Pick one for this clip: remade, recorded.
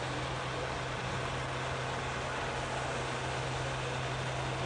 recorded